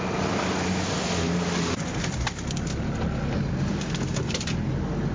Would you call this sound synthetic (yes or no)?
no